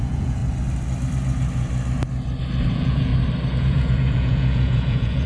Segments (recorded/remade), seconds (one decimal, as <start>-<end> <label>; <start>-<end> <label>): 0.0-0.4 remade; 0.4-2.7 recorded; 2.7-3.1 remade; 3.1-3.6 recorded; 3.6-5.3 remade